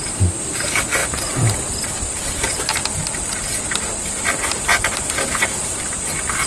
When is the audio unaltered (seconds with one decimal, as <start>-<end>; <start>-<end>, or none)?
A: 1.0-4.3